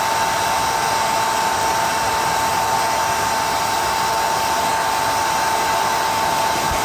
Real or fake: real